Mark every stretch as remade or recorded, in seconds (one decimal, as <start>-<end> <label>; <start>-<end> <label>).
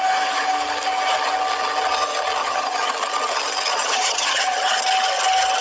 0.0-2.4 recorded; 2.4-2.9 remade; 2.9-3.7 recorded; 3.7-4.7 remade; 4.7-5.6 recorded